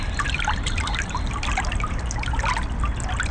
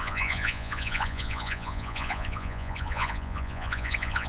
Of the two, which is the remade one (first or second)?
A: second